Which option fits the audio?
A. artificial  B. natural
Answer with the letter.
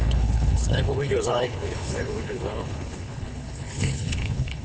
A